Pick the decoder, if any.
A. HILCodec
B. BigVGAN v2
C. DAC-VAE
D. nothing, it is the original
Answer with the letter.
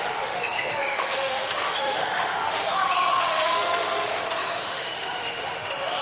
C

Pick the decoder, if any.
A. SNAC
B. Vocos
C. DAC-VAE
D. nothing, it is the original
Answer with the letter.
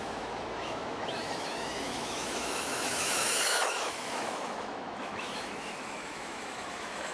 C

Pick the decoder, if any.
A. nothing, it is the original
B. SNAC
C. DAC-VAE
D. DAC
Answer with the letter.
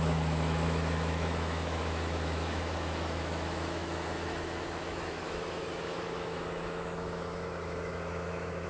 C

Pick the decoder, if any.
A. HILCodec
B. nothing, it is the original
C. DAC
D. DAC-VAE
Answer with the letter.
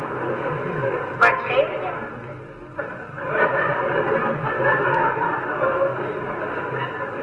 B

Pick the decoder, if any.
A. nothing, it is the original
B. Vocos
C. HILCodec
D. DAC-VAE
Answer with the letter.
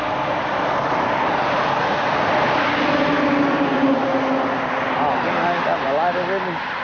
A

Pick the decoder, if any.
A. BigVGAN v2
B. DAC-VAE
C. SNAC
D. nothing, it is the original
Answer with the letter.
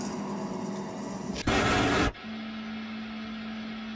D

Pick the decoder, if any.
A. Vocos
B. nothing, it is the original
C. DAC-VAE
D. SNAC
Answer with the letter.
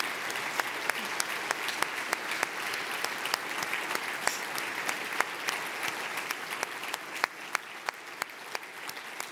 B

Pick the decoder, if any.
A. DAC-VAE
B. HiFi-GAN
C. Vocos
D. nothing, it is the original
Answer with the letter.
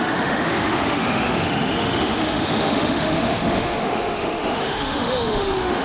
A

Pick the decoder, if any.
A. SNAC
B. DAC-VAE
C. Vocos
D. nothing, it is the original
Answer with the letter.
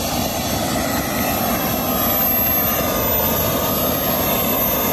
D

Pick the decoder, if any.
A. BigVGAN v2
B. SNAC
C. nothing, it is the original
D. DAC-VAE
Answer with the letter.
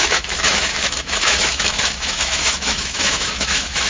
D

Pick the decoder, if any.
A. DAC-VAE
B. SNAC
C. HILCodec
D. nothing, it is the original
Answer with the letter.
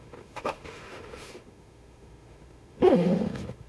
A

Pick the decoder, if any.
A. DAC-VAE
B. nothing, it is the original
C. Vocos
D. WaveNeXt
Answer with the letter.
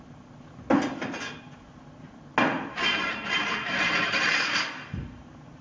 B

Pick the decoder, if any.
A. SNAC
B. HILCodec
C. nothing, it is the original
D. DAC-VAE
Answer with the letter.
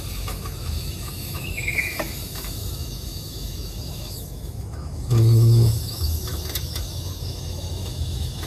D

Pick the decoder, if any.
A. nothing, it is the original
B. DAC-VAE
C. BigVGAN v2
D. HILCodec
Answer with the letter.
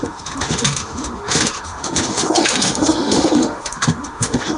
B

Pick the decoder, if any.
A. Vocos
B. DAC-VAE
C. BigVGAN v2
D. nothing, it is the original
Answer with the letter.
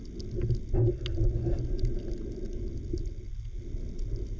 D